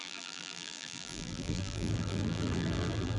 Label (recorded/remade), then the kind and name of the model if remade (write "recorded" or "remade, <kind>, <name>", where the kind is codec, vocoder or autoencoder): remade, vocoder, BigVGAN v2